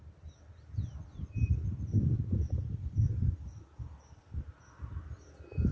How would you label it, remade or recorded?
recorded